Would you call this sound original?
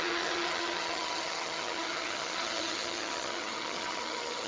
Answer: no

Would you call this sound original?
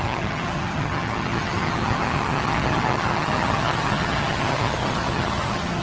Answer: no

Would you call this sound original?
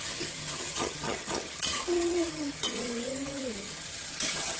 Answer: no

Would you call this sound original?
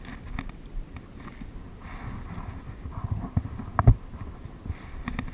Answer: yes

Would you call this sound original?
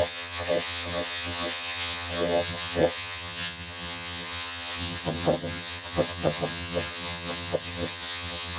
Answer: no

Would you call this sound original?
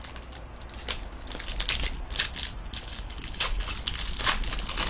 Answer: yes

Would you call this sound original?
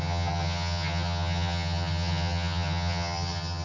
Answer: no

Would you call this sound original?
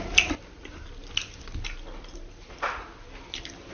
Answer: yes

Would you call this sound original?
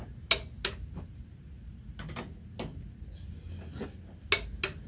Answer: yes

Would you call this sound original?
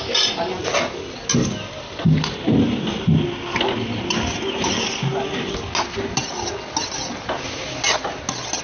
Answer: yes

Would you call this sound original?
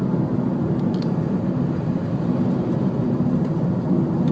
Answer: yes